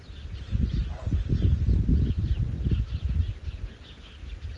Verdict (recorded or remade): recorded